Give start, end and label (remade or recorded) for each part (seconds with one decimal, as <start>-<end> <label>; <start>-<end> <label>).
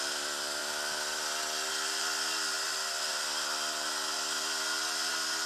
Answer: 0.0-0.6 remade; 0.6-1.7 recorded; 1.7-5.5 remade